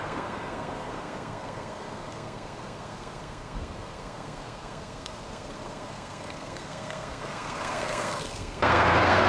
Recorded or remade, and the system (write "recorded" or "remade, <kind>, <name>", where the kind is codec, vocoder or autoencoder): remade, codec, SNAC